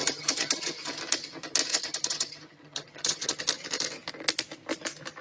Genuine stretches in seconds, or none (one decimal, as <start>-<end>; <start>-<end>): 1.0-1.7; 3.4-5.2